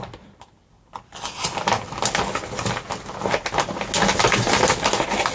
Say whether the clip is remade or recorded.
recorded